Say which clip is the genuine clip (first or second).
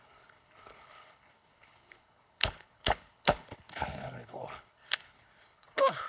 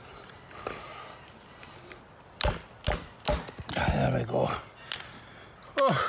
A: second